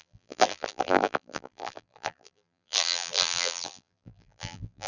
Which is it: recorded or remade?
remade